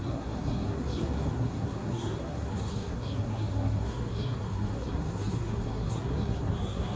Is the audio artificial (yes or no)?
yes